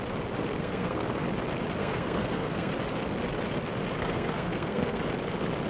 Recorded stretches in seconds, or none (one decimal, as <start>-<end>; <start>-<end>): 0.0-0.6; 1.2-1.8; 2.7-4.0; 5.0-5.7